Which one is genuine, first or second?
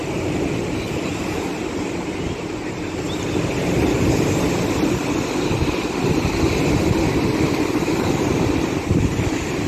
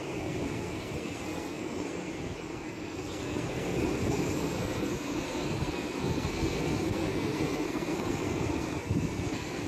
first